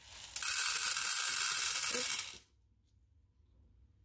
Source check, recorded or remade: recorded